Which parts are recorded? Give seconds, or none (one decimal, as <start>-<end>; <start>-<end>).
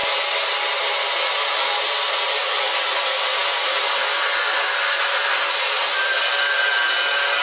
0.0-7.4